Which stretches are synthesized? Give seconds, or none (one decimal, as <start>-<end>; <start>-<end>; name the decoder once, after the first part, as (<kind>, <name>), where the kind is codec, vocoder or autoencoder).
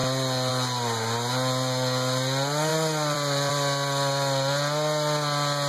2.7-3.5 (vocoder, BigVGAN v2)